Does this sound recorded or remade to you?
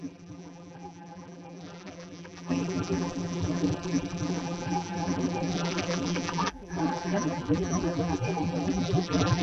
remade